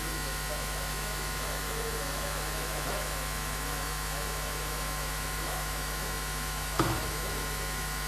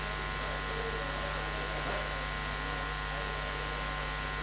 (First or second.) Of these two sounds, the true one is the second